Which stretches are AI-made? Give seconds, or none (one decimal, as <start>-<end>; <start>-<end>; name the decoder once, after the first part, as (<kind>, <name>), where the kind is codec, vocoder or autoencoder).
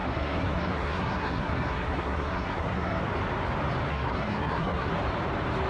0.0-3.0 (codec, SNAC); 3.9-4.9